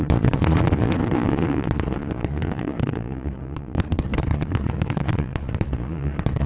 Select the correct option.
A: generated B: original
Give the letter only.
A